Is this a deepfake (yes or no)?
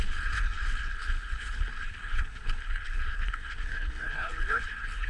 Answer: yes